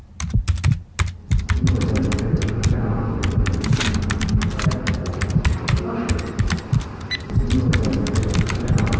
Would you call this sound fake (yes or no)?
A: no